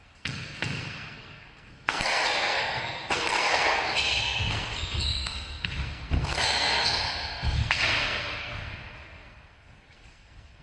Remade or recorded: remade